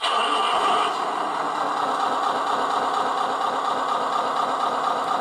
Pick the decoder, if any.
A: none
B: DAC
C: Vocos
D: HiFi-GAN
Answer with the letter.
A